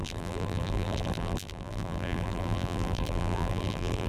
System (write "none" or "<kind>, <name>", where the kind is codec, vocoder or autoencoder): vocoder, BigVGAN v2